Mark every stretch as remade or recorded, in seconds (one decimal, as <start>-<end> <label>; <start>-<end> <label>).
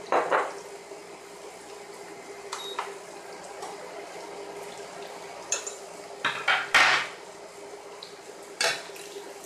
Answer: 0.0-9.5 recorded